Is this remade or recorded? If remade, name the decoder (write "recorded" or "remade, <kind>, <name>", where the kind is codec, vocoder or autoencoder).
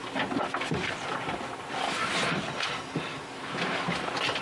remade, vocoder, BigVGAN v2